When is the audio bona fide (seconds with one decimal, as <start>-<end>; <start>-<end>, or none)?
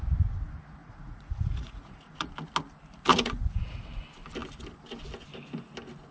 0.0-0.8; 2.3-3.1; 3.8-6.1